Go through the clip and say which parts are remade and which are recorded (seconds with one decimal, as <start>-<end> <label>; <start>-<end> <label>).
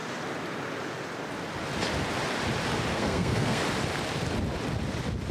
0.0-2.9 recorded; 2.9-3.6 remade; 3.6-5.3 recorded